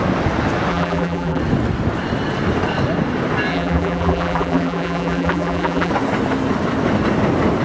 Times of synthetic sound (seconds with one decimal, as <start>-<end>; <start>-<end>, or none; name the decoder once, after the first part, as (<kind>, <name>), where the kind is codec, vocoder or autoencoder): 0.7-1.4 (vocoder, BigVGAN v2); 3.5-5.9

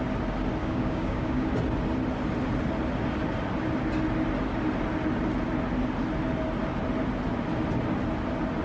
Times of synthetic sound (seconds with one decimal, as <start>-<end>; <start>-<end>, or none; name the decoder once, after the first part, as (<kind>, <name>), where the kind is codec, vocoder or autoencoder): 0.6-1.5 (codec, DAC)

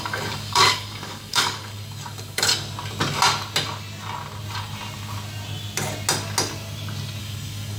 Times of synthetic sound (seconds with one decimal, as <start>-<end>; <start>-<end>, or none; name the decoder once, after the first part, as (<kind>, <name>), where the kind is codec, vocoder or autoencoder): 0.0-2.5 (codec, DAC); 7.2-7.8

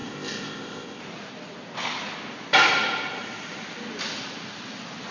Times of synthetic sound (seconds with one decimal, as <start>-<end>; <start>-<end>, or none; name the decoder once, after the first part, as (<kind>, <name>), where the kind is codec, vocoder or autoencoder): 0.0-1.0 (codec, ZipCodec)

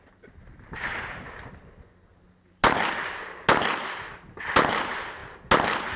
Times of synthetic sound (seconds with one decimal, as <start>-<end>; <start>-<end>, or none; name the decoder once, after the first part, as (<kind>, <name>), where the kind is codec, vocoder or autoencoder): none

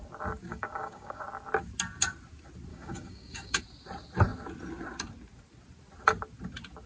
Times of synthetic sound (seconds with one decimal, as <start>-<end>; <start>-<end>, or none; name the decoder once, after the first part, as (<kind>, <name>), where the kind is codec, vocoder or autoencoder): 0.5-1.2 (codec, DAC); 2.7-3.6

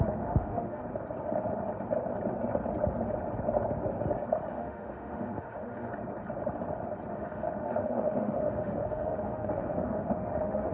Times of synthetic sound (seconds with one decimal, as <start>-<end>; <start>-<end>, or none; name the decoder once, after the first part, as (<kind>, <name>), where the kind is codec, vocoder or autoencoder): 0.0-0.8 (autoencoder, DAC-VAE); 4.5-5.9; 7.1-10.7

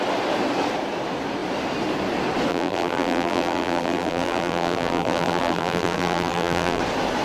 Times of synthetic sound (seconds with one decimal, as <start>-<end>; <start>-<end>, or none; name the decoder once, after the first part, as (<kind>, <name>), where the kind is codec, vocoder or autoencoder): 2.5-6.8 (vocoder, BigVGAN v2)